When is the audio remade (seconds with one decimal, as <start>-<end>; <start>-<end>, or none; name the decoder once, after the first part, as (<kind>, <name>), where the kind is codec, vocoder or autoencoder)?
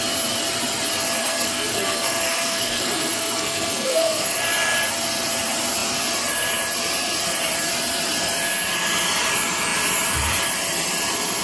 1.2-4.4 (codec, SNAC)